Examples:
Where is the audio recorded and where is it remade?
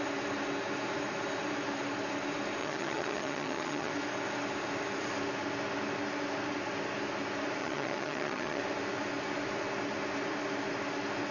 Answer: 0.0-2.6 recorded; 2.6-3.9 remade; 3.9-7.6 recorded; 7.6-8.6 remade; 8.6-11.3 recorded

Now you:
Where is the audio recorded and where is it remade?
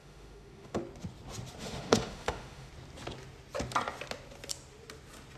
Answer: 0.0-0.8 remade; 0.8-1.6 recorded; 1.6-2.7 remade; 2.7-5.4 recorded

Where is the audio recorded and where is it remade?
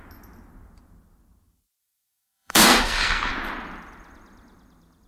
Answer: 0.0-1.8 recorded; 1.8-3.3 remade; 3.3-5.1 recorded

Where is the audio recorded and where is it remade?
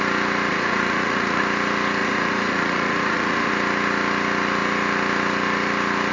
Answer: 0.0-0.5 recorded; 0.5-1.4 remade; 1.4-2.0 recorded; 2.0-3.5 remade; 3.5-6.1 recorded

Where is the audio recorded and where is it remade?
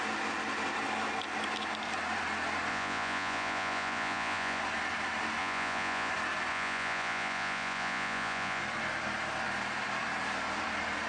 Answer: 0.0-2.7 recorded; 2.7-4.6 remade; 4.6-5.4 recorded; 5.4-6.1 remade; 6.1-6.5 recorded; 6.5-8.6 remade; 8.6-11.1 recorded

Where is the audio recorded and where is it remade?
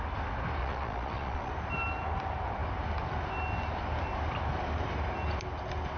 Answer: 0.0-0.6 recorded; 0.6-1.5 remade; 1.5-6.0 recorded